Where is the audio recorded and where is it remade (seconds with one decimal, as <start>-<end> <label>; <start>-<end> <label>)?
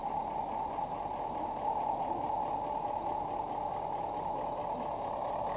0.0-5.6 recorded